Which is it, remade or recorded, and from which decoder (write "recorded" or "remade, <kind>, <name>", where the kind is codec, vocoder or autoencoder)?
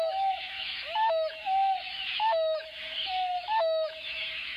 remade, autoencoder, DAC-VAE